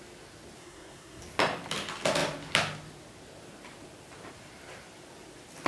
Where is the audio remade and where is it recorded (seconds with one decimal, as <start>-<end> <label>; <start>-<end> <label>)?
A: 0.0-0.6 recorded; 0.6-1.2 remade; 1.2-5.7 recorded